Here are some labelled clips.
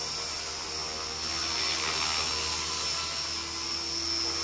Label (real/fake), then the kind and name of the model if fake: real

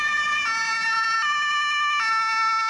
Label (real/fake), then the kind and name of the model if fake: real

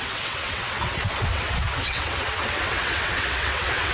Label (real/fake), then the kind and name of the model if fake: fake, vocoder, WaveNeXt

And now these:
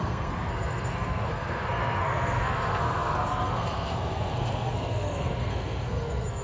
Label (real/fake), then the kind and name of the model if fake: fake, codec, SNAC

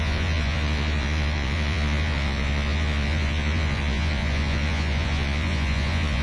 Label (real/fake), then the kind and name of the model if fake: fake, vocoder, Vocos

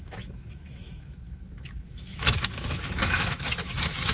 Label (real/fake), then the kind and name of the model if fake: fake, autoencoder, DAC-VAE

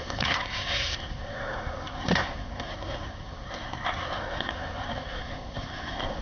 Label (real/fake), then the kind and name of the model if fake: fake, codec, SNAC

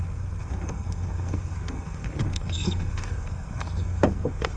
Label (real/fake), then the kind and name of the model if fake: fake, codec, SNAC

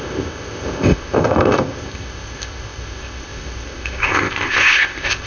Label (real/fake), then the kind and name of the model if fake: fake, codec, ZipCodec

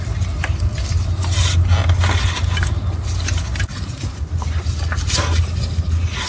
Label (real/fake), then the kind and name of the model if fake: real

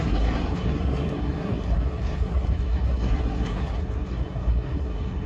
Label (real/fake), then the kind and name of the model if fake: fake, codec, SNAC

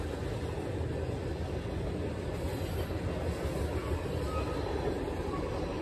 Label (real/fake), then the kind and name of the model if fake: real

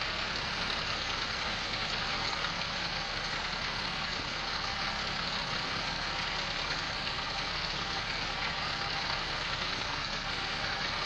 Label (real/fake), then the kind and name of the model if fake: fake, codec, SNAC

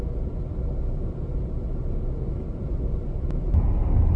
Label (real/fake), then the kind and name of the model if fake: real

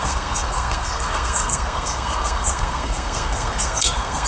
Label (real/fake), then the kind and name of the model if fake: fake, codec, SNAC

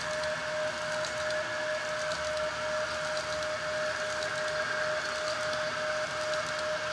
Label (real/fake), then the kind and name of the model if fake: real